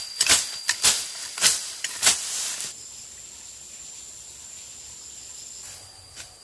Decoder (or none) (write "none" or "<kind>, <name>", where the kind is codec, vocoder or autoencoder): none